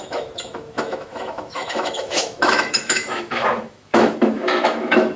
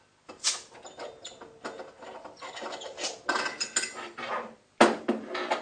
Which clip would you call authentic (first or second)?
second